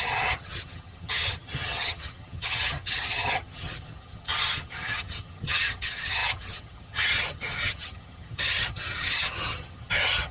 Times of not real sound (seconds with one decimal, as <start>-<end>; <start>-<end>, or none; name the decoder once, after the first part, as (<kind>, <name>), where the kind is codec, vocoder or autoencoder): 0.0-10.3 (vocoder, HiFi-GAN)